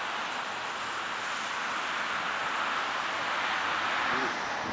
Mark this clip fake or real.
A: real